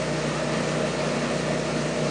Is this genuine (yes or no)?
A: yes